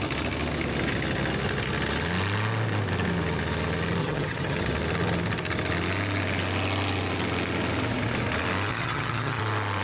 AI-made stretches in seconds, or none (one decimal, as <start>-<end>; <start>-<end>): 4.0-4.7; 8.7-9.4